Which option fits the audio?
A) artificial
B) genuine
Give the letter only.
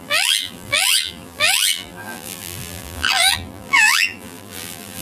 A